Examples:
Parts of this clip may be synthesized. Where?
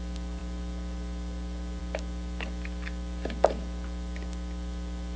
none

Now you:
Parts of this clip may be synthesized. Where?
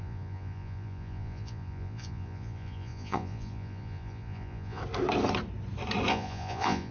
0.0-4.8; 6.1-6.9